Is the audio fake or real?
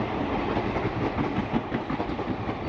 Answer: real